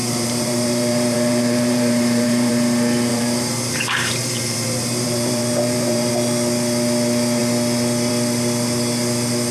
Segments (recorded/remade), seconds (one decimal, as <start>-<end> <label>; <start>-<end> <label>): 0.0-2.5 remade; 2.5-3.1 recorded; 3.1-6.1 remade; 6.1-9.5 recorded